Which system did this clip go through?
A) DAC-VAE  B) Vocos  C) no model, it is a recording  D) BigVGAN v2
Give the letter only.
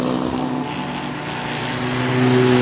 C